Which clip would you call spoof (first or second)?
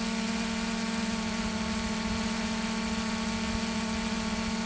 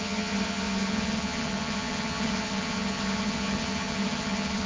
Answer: second